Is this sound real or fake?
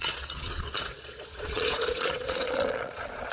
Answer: fake